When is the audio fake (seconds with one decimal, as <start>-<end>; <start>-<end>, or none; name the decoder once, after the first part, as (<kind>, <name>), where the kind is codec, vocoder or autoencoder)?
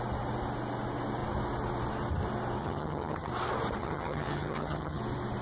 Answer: 2.6-3.3 (vocoder, HiFi-GAN); 3.8-5.0